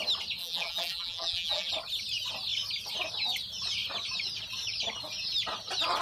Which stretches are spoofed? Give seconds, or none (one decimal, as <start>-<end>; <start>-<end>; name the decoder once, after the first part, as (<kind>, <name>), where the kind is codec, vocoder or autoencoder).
0.4-1.7 (vocoder, BigVGAN v2)